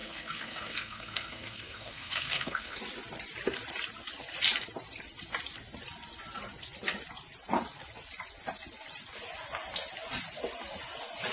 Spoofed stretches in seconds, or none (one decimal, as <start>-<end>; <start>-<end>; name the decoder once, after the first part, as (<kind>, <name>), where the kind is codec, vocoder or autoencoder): 0.0-2.8 (codec, SNAC)